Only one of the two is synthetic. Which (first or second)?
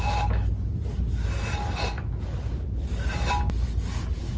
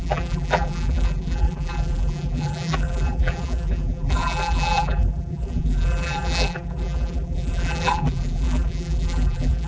second